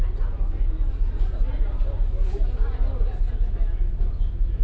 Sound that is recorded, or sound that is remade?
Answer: recorded